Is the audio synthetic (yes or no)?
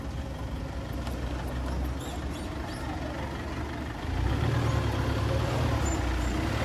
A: no